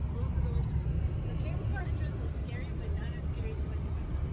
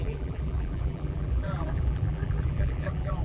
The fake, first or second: second